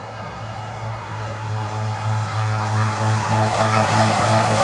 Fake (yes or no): yes